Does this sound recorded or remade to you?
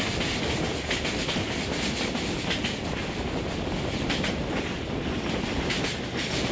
recorded